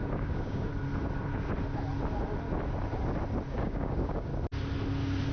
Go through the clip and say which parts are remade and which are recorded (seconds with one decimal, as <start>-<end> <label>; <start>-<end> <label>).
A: 0.0-0.7 remade; 0.7-3.5 recorded; 3.5-4.3 remade; 4.3-5.3 recorded